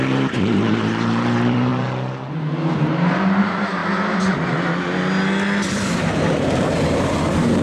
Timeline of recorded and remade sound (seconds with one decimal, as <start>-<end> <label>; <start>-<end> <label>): 0.0-1.7 remade; 1.7-2.3 recorded; 2.3-3.8 remade; 3.8-5.8 recorded; 5.8-7.6 remade